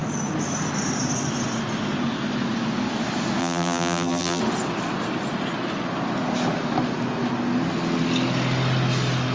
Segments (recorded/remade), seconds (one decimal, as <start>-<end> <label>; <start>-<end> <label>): 0.0-3.4 recorded; 3.4-4.4 remade; 4.4-9.3 recorded